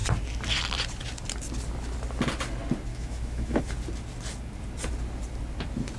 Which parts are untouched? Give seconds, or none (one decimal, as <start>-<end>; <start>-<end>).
0.0-2.9; 3.6-6.0